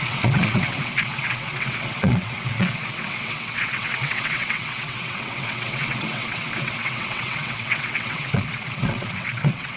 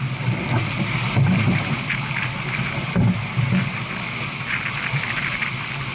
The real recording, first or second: second